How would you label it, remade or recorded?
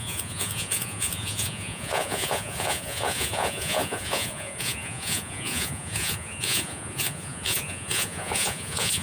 remade